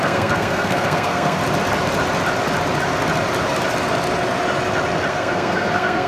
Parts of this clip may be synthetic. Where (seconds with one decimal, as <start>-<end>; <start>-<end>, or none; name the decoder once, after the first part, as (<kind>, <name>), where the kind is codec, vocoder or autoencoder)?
0.0-1.4 (codec, SNAC); 5.1-6.1